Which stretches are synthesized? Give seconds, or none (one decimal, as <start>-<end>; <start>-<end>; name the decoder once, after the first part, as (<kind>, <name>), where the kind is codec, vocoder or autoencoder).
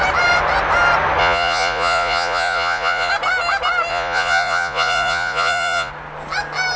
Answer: 1.2-3.1 (vocoder, Vocos); 3.9-5.9